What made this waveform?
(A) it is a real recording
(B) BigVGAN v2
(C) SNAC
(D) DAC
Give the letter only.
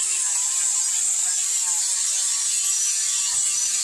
A